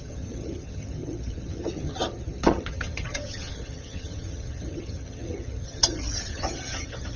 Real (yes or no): no